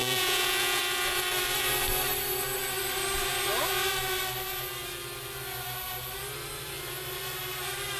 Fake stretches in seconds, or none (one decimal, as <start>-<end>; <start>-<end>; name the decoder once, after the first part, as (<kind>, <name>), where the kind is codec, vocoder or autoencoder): 0.0-0.8 (vocoder, Vocos)